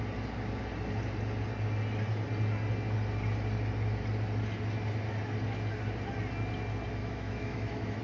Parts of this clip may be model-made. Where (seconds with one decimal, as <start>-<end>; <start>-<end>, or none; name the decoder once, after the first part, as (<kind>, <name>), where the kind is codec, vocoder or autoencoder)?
7.0-8.0 (autoencoder, DAC-VAE)